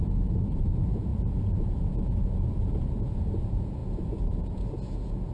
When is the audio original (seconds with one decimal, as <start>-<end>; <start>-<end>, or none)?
none